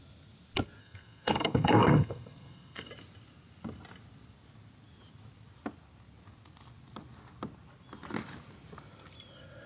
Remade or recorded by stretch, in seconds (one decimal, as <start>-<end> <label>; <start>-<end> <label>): 0.0-0.8 recorded; 0.8-2.9 remade; 2.9-9.7 recorded